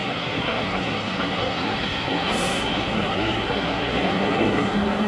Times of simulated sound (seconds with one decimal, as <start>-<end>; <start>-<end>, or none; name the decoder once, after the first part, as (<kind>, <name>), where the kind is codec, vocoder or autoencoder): 0.0-5.1 (codec, SNAC)